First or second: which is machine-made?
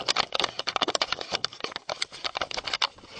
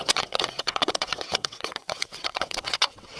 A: second